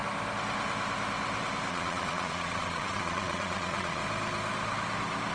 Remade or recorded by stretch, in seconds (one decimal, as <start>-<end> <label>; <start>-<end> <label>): 0.0-1.7 recorded; 1.7-4.0 remade; 4.0-5.3 recorded